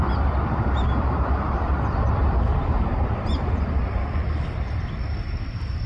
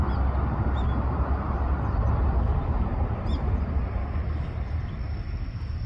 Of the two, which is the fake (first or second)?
first